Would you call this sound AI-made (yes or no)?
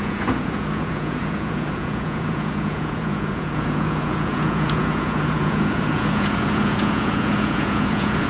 yes